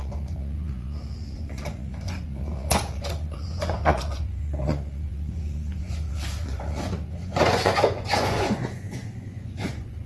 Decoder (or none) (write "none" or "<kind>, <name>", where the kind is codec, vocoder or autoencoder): vocoder, Vocos